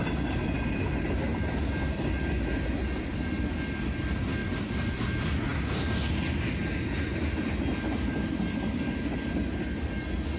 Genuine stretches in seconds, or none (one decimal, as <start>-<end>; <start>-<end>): 0.0-4.4; 5.0-10.4